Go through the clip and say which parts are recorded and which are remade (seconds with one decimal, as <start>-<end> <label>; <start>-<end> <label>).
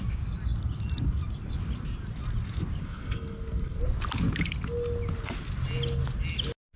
0.0-2.8 recorded; 2.8-3.8 remade; 3.8-6.8 recorded